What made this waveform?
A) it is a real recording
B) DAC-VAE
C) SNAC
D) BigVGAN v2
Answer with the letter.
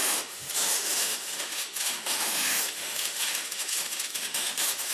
B